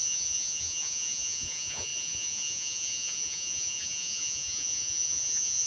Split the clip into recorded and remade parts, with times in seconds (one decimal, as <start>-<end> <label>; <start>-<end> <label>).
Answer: 0.0-5.7 remade